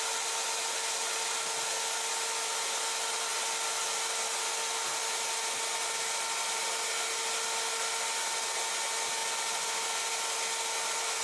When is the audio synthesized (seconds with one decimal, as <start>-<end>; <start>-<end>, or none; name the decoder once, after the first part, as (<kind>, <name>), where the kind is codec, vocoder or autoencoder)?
none